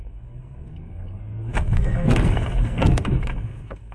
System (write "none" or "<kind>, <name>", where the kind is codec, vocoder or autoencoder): codec, SNAC